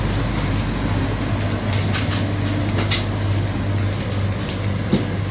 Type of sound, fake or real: real